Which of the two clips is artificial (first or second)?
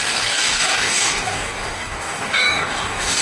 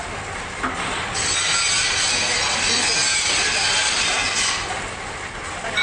first